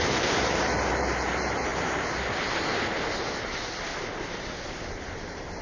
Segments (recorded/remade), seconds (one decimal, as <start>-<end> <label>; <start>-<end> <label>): 0.0-1.7 remade; 1.7-5.1 recorded; 5.1-5.6 remade